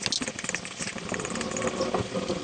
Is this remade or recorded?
recorded